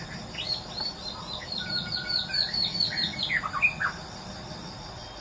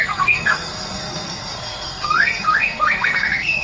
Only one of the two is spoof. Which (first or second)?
second